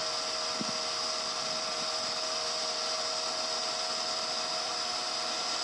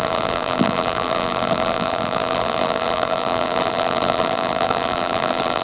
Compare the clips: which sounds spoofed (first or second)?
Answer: second